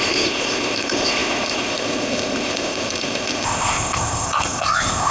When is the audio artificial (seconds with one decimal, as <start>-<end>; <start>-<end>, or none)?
0.0-5.1